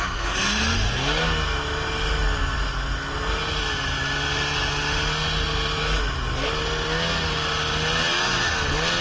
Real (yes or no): yes